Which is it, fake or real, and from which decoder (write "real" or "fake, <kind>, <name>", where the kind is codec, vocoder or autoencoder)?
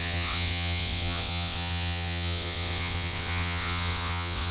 fake, vocoder, WaveNeXt